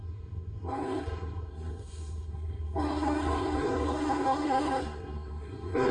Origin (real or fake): fake